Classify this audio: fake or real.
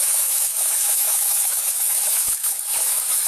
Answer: fake